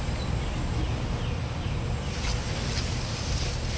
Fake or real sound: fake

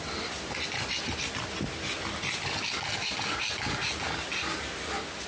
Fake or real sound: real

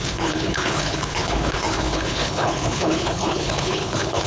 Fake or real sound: fake